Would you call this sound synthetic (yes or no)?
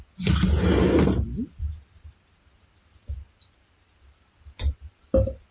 no